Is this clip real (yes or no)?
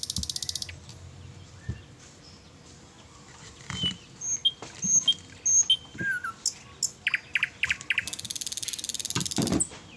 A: yes